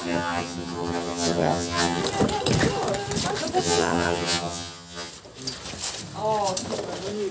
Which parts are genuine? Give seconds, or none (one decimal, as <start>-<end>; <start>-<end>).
2.0-3.6; 5.1-7.3